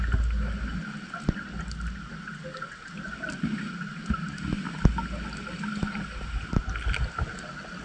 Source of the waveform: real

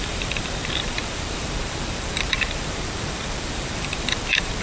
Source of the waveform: fake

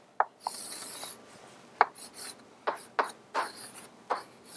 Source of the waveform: real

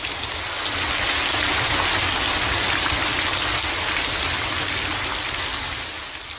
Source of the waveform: real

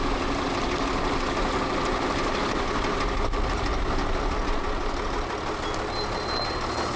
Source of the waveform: real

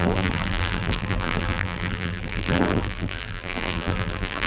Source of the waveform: fake